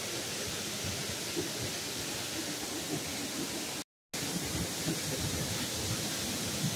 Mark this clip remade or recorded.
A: recorded